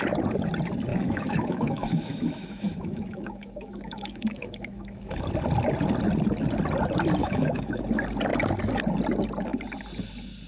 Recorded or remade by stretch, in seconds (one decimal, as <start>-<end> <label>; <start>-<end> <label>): 0.0-0.9 recorded; 0.9-5.2 remade; 5.2-7.2 recorded; 7.2-7.8 remade; 7.8-10.5 recorded